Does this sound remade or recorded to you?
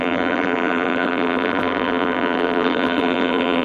remade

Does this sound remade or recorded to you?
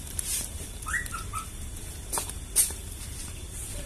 remade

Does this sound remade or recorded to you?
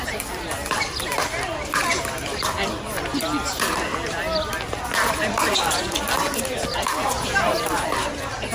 remade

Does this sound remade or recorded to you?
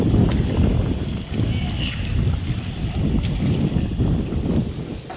recorded